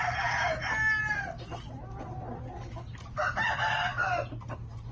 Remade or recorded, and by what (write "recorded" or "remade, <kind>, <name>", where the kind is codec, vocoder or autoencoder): recorded